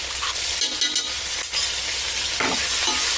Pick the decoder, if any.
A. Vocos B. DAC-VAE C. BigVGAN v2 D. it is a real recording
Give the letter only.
D